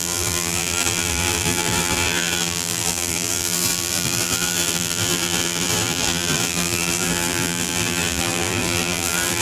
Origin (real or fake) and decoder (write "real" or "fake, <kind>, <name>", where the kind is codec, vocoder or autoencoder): fake, vocoder, BigVGAN v2